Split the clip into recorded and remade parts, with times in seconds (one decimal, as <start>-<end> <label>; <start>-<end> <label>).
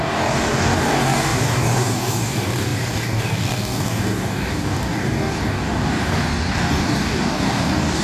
0.0-8.0 remade